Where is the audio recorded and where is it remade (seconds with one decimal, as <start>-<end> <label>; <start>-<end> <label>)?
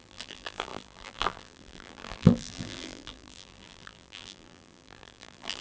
0.0-5.6 remade